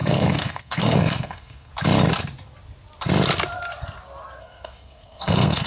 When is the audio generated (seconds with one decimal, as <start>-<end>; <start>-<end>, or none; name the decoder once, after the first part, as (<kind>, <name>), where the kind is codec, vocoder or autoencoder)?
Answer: 0.0-1.7 (codec, SNAC); 4.4-5.7